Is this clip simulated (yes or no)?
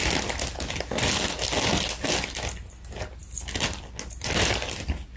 no